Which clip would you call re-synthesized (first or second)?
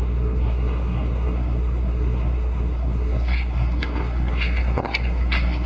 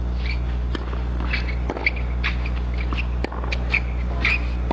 first